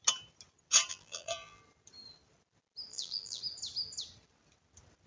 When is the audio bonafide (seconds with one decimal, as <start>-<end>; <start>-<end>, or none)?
0.0-0.9; 1.6-2.9; 3.4-5.1